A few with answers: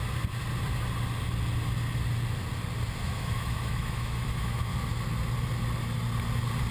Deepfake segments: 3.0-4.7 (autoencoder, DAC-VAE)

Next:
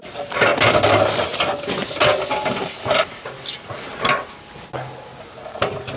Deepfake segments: none

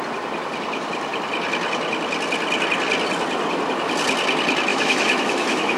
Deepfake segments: 4.7-5.8 (autoencoder, DAC-VAE)

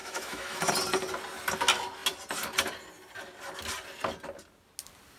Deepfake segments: 0.0-0.7 (autoencoder, DAC-VAE)